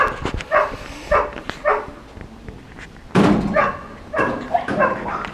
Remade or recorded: recorded